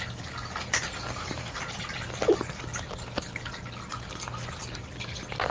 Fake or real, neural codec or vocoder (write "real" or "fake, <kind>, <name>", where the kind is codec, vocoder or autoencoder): real